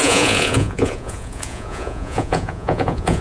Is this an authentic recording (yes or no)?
no